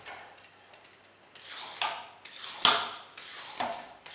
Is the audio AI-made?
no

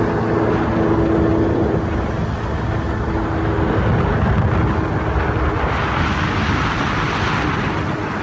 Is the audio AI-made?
no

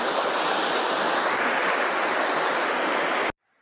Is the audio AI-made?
no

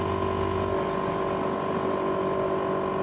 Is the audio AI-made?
no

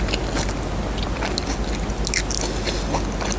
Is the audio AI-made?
no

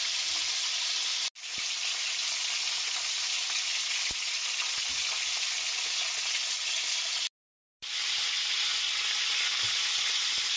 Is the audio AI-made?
no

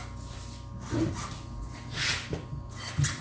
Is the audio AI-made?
no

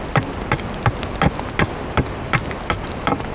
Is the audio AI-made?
no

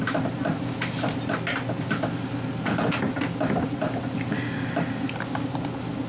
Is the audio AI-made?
no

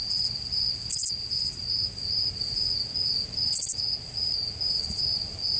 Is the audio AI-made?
no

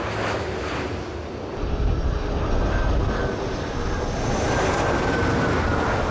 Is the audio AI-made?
no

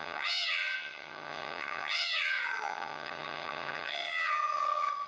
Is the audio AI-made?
yes